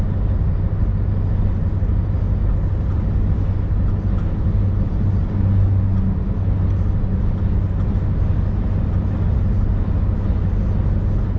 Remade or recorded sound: recorded